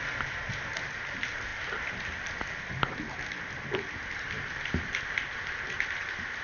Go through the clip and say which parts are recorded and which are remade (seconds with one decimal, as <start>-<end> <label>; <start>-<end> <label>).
0.0-6.4 recorded